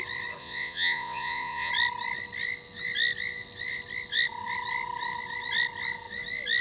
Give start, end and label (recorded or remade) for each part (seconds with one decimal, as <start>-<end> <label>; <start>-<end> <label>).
0.0-0.4 recorded; 0.4-1.7 remade; 1.7-6.6 recorded